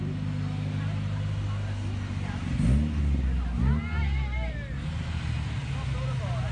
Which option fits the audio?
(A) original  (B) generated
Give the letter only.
A